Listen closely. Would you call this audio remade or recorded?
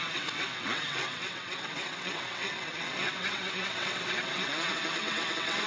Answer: remade